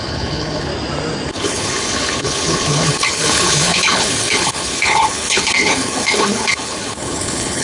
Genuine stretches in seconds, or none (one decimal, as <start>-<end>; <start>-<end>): 0.7-1.3